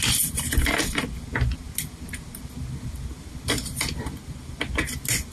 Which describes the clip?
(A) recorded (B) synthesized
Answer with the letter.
A